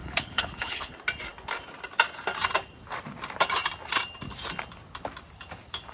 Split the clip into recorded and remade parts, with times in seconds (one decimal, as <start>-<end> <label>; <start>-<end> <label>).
0.0-0.9 remade; 0.9-5.9 recorded